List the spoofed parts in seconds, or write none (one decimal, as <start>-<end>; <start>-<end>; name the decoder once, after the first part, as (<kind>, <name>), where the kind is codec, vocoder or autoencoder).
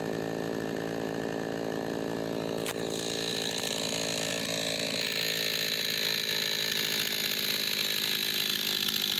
3.3-4.3 (vocoder, BigVGAN v2); 8.2-9.2